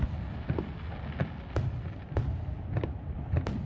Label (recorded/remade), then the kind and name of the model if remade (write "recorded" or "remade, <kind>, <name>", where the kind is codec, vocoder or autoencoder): recorded